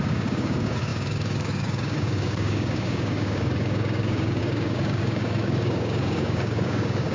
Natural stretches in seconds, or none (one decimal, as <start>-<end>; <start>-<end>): none

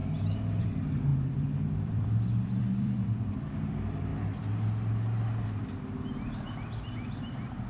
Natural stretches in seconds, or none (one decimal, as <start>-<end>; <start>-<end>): 0.0-0.6; 4.1-5.6

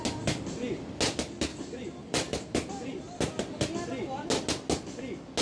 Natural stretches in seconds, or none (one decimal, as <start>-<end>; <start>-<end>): 0.0-1.5; 3.2-5.4

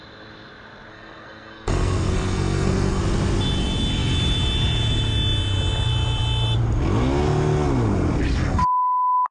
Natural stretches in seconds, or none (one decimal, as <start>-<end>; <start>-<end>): 0.0-0.9; 3.0-8.4

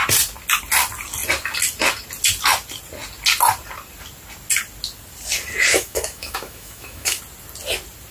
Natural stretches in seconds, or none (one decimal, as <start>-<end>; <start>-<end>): 0.0-5.7; 7.2-8.1

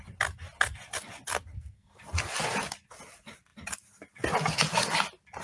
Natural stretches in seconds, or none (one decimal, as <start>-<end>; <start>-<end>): 0.0-1.5; 2.0-5.4

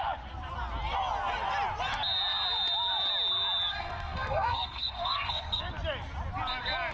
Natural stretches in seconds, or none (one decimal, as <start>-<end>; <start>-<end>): 0.0-3.7; 5.6-6.9

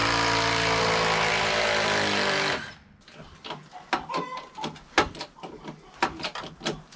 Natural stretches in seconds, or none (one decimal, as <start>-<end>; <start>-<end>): 0.0-7.0